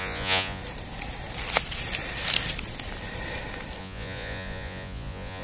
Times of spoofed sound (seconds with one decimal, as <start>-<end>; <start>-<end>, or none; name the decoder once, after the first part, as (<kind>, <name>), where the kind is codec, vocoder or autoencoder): 0.0-0.6 (vocoder, Vocos); 3.8-5.4